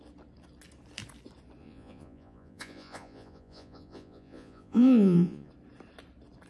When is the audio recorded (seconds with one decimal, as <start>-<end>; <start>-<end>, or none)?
0.0-1.6; 5.5-6.5